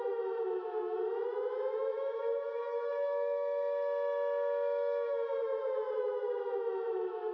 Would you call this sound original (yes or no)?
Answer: no